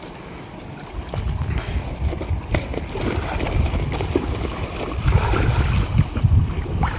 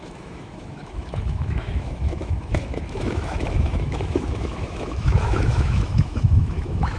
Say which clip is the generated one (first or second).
second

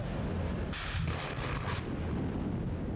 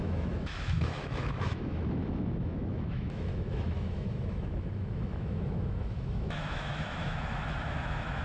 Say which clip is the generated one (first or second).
second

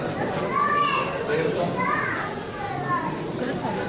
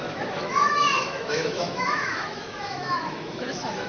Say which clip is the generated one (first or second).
second